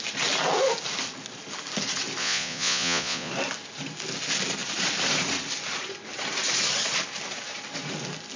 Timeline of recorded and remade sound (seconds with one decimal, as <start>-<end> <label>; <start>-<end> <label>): 0.0-2.2 recorded; 2.2-3.3 remade; 3.3-8.4 recorded